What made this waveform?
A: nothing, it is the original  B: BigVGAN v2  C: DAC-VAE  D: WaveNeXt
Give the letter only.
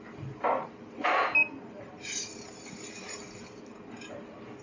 A